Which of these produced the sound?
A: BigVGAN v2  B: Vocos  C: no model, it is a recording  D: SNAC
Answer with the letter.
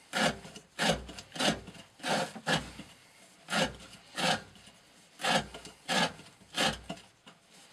C